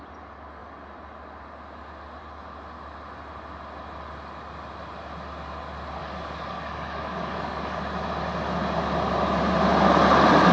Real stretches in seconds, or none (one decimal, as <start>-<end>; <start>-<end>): 0.0-6.0; 7.8-10.5